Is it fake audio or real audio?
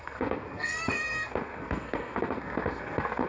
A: fake